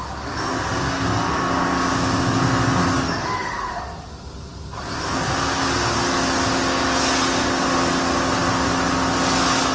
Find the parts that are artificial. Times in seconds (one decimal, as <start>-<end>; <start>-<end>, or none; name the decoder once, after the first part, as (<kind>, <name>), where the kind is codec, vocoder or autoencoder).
3.2-3.8 (autoencoder, DAC-VAE)